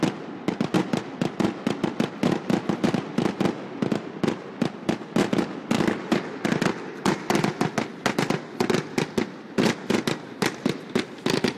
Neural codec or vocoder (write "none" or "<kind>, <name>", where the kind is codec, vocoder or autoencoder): none